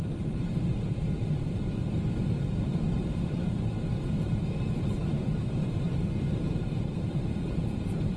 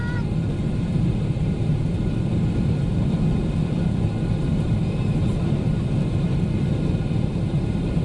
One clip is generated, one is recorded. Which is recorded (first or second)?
second